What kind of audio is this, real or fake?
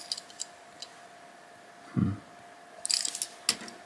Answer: real